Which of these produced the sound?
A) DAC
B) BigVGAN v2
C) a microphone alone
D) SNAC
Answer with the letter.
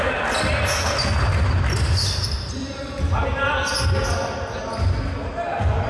C